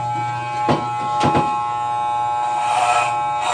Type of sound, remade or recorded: recorded